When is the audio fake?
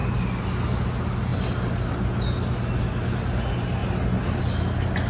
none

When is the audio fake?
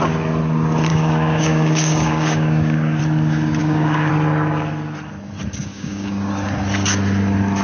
0.9-3.0; 3.6-4.1; 5.7-6.3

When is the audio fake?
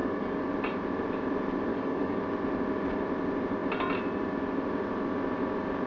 0.0-0.5; 1.7-2.2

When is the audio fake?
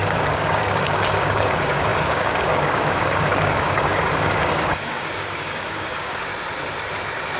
0.0-6.3